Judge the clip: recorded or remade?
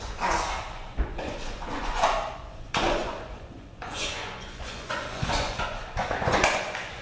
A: remade